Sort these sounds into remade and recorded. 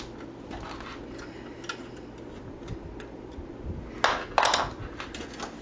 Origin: recorded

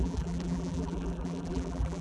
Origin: remade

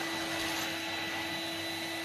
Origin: recorded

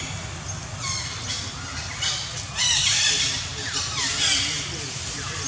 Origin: recorded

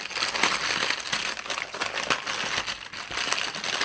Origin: recorded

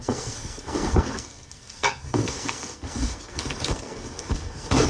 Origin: remade